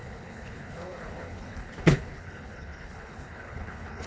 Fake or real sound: fake